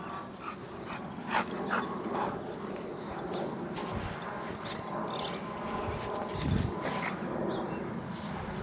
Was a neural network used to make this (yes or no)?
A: no